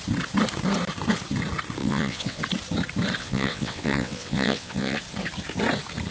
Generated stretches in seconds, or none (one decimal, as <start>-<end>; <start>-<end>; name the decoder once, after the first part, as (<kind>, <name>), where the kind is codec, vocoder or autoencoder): 1.8-2.4 (vocoder, WaveNeXt); 3.2-5.0